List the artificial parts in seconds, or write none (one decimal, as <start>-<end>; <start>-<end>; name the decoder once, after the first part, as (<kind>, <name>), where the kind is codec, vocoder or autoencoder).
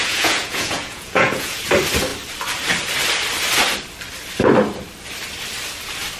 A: 0.0-1.6 (vocoder, Vocos)